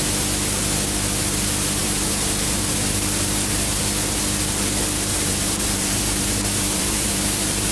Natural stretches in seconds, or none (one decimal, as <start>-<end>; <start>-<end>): 0.0-1.8; 3.8-5.1